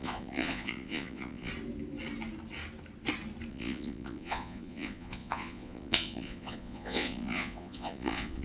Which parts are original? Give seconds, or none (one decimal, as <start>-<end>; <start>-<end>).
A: 1.5-3.5